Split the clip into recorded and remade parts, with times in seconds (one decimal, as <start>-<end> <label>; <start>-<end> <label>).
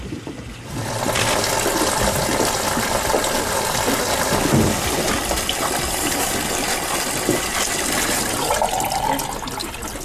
0.0-10.0 recorded